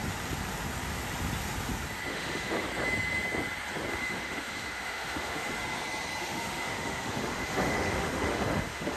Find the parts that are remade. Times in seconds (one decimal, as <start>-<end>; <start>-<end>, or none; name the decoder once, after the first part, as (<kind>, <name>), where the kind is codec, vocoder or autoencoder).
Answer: 2.1-2.7 (autoencoder, DAC-VAE); 3.9-5.5; 6.2-9.0